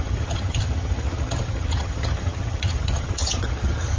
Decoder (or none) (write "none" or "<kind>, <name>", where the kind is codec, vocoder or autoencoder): vocoder, HiFi-GAN